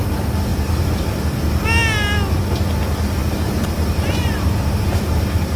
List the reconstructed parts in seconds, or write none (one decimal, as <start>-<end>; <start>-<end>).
0.5-1.1; 3.2-5.6

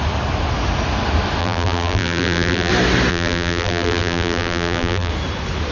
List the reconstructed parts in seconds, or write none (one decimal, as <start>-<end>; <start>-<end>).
1.4-2.7; 3.1-5.1

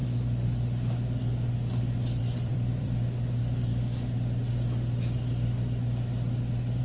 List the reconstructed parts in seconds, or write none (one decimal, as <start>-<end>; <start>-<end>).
2.2-3.7